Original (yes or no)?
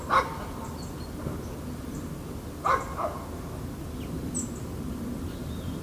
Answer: yes